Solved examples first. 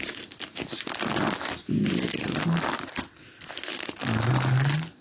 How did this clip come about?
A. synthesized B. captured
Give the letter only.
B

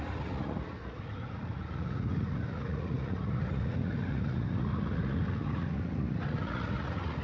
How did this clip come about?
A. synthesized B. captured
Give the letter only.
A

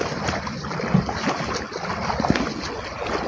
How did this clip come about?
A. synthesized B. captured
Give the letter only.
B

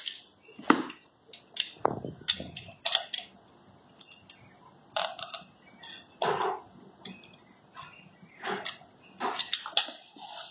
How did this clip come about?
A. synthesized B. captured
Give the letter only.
B